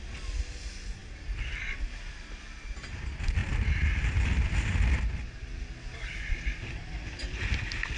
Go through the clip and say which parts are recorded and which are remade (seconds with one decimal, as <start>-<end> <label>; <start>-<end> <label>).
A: 0.0-8.0 recorded